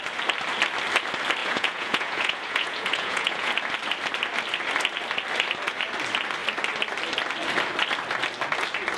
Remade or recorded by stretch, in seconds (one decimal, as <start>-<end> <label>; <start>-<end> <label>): 0.0-1.4 recorded; 1.4-3.5 remade; 3.5-9.0 recorded